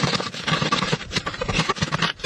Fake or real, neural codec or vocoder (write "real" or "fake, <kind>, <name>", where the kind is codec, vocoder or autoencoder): fake, vocoder, BigVGAN v2